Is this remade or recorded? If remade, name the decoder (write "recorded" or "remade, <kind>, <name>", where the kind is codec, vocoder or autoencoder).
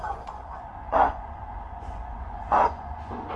remade, vocoder, Vocos